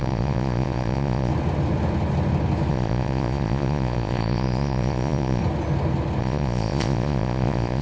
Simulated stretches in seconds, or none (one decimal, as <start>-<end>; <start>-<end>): 0.0-1.3; 2.7-5.4; 6.2-7.8